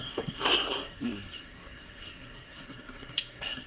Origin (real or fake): fake